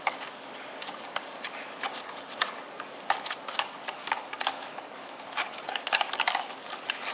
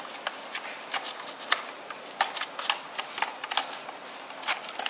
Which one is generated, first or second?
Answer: first